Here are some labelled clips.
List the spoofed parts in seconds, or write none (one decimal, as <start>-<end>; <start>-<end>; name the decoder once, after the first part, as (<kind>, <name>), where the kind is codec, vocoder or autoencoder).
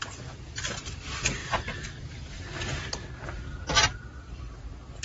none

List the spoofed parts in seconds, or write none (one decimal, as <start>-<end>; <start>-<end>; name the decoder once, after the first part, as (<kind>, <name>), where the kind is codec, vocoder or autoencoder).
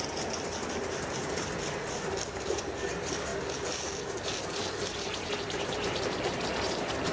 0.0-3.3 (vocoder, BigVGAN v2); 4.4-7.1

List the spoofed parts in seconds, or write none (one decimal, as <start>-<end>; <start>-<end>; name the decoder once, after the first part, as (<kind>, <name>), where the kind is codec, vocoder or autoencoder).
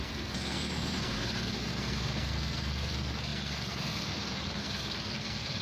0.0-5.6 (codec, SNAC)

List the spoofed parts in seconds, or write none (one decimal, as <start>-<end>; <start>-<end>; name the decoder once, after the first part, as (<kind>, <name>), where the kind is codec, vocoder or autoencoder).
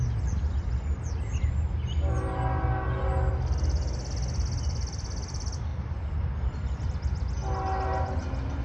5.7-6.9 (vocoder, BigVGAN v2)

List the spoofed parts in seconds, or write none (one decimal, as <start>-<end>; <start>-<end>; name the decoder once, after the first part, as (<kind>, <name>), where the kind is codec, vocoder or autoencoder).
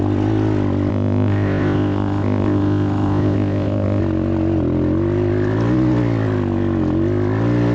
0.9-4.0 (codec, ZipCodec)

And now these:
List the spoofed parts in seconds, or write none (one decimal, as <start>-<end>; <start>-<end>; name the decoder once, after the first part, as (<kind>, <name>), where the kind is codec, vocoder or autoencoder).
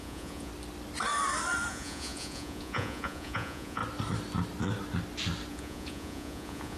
0.0-0.5 (vocoder, Vocos); 1.7-3.8; 5.5-6.8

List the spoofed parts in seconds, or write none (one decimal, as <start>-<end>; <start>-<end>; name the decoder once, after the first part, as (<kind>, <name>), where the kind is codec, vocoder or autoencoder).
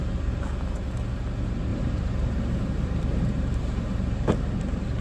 1.7-4.3 (vocoder, BigVGAN v2)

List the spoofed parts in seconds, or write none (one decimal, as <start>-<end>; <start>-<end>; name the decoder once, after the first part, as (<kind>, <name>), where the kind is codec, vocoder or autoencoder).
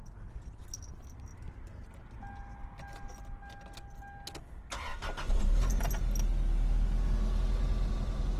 none